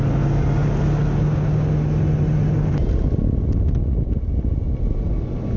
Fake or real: real